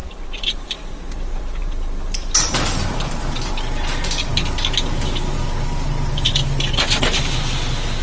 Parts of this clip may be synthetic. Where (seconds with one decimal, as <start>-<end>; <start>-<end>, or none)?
0.0-3.5